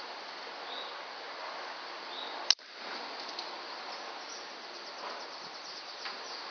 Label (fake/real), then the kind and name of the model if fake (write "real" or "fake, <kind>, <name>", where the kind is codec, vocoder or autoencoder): real